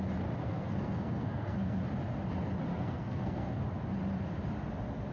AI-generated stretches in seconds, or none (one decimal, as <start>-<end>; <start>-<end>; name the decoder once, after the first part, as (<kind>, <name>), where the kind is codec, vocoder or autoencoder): 0.4-1.8 (codec, SNAC); 2.7-3.6